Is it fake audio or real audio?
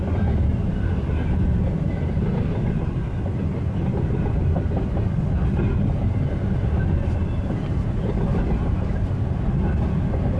real